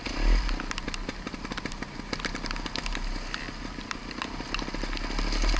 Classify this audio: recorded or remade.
recorded